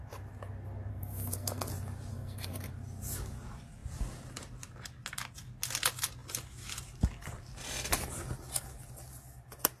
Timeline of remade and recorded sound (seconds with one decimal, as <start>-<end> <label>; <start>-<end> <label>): 0.0-0.9 recorded; 0.9-1.7 remade; 1.7-2.1 recorded; 2.1-2.7 remade; 2.7-9.8 recorded

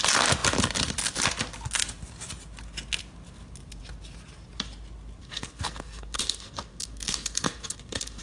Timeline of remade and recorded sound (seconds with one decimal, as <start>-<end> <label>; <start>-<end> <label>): 0.0-5.2 recorded; 5.2-8.2 remade

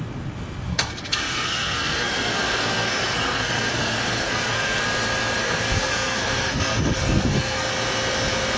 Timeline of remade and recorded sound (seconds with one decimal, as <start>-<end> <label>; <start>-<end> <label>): 0.0-0.7 recorded; 0.7-4.8 remade; 4.8-5.4 recorded; 5.4-7.7 remade; 7.7-8.6 recorded

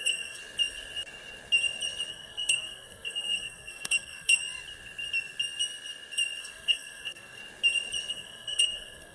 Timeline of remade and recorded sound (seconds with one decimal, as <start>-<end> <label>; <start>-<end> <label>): 0.0-0.4 remade; 0.4-2.1 recorded; 2.1-4.4 remade; 4.4-6.4 recorded; 6.4-7.4 remade; 7.4-8.1 recorded; 8.1-9.1 remade

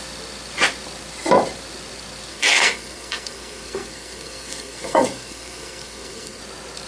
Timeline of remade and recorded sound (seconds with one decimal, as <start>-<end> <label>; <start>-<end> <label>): 0.0-2.3 recorded; 2.3-6.4 remade; 6.4-6.9 recorded

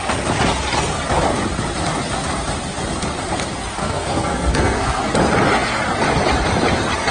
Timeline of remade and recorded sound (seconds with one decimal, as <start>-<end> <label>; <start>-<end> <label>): 0.0-3.8 recorded; 3.8-5.0 remade; 5.0-7.1 recorded

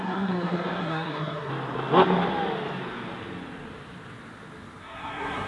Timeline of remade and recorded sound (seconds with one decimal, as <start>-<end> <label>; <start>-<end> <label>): 0.0-1.5 remade; 1.5-4.8 recorded; 4.8-5.5 remade